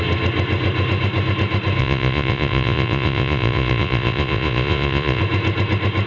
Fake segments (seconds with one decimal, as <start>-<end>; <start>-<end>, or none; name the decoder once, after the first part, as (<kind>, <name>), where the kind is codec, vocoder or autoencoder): 1.8-5.2 (vocoder, Vocos)